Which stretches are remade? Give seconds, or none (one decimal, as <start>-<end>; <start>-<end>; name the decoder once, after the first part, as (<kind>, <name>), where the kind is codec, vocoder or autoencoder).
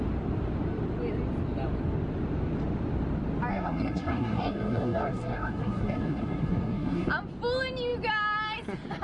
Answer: 3.5-7.1 (codec, SNAC)